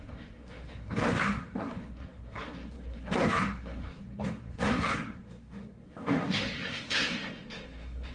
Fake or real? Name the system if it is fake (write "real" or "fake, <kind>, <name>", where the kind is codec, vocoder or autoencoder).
fake, codec, SNAC